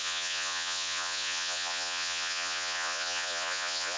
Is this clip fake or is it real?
fake